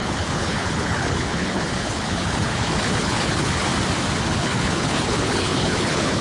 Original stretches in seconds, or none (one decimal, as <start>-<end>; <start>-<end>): 3.7-4.2